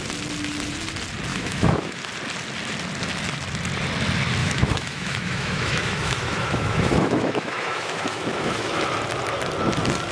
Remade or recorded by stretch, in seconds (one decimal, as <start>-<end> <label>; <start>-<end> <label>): 0.0-1.3 recorded; 1.3-2.0 remade; 2.0-4.4 recorded; 4.4-8.8 remade; 8.8-10.1 recorded

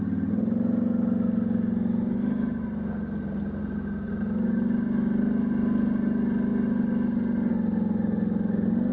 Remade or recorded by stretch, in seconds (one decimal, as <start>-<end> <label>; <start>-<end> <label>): 0.0-8.9 recorded

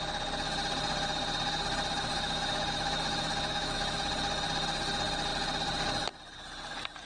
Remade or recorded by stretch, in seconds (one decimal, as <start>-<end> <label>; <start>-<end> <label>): 0.0-2.1 recorded; 2.1-4.0 remade; 4.0-7.1 recorded

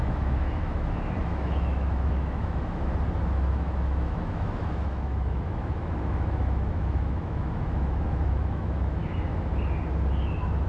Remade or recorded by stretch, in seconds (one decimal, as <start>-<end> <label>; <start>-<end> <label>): 0.0-2.9 remade; 2.9-3.5 recorded; 3.5-9.0 remade; 9.0-10.7 recorded